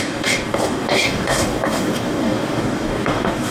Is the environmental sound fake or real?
fake